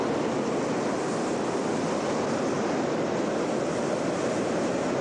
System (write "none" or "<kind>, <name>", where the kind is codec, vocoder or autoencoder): none